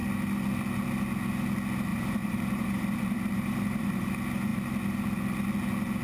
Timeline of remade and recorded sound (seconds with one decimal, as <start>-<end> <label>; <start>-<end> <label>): 0.0-1.9 recorded; 1.9-4.1 remade; 4.1-6.0 recorded